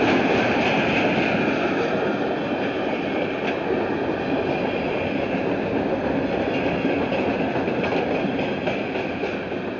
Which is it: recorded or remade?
recorded